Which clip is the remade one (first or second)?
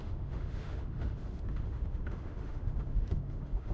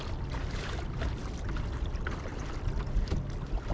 first